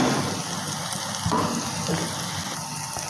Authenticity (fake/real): real